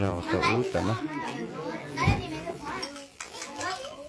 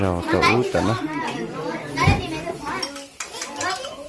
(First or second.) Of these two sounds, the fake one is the first